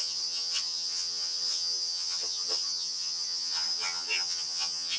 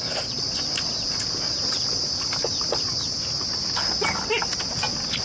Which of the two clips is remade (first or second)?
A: first